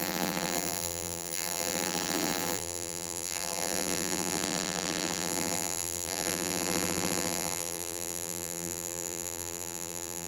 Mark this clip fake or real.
fake